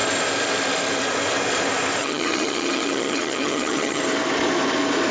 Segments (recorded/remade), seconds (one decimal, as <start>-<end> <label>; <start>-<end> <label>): 0.0-2.0 recorded; 2.0-4.0 remade; 4.0-5.1 recorded